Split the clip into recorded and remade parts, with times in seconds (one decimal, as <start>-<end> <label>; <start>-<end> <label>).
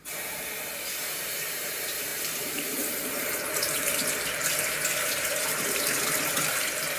0.0-7.0 remade